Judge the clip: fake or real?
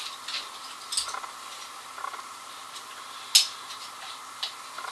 real